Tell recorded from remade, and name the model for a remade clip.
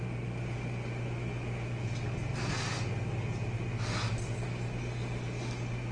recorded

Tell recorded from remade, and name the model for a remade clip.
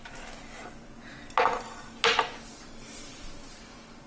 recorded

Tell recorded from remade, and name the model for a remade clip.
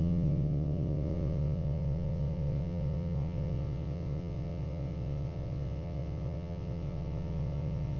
remade, vocoder, WaveNeXt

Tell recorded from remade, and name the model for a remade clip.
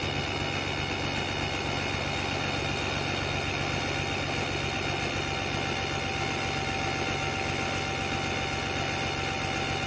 recorded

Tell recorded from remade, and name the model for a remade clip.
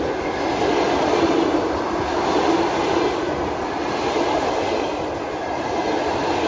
recorded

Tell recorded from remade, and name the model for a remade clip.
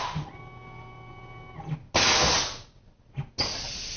recorded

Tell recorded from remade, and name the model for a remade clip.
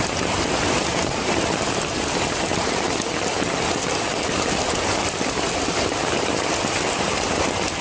recorded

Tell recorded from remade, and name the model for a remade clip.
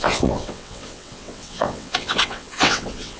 remade, vocoder, WaveNeXt